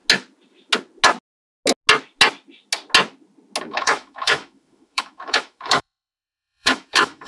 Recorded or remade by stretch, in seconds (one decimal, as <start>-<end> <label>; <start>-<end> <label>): 0.0-3.6 recorded; 3.6-7.3 remade